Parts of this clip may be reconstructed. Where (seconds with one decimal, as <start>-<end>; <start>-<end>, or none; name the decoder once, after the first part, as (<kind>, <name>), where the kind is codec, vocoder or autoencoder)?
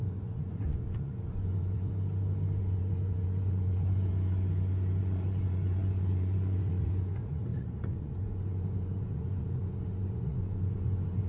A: 0.0-1.9 (vocoder, Vocos); 2.6-4.1; 5.0-11.3